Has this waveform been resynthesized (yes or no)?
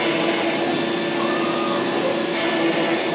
no